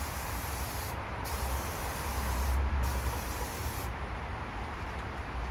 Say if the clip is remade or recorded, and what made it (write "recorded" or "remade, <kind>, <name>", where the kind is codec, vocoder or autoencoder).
remade, vocoder, BigVGAN v2